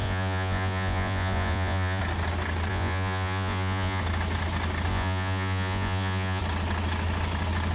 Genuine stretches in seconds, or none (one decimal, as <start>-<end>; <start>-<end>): 2.0-2.7; 4.0-4.9; 6.4-7.7